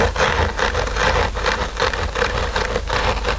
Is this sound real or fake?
real